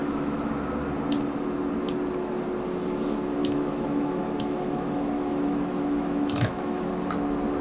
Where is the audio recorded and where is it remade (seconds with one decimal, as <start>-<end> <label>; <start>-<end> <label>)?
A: 0.0-0.5 remade; 0.5-3.3 recorded; 3.3-6.9 remade; 6.9-7.6 recorded